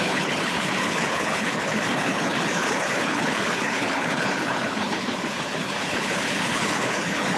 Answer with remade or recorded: remade